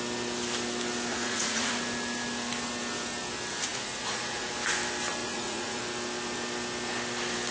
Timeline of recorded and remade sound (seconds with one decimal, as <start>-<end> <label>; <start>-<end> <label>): 0.0-1.1 recorded; 1.1-1.7 remade; 1.7-3.7 recorded; 3.7-4.5 remade; 4.5-5.2 recorded; 5.2-5.8 remade; 5.8-7.5 recorded